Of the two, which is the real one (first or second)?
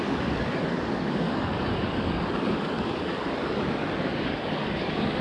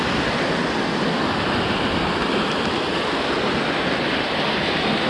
second